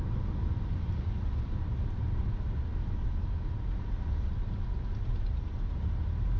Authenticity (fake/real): real